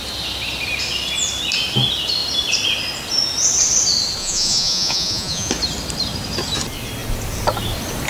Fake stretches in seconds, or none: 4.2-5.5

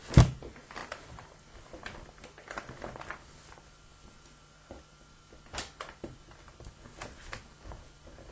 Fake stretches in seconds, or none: none

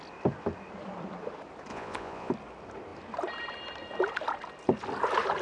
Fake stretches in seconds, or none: 1.7-2.3

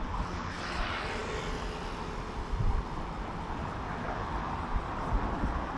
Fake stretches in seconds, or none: none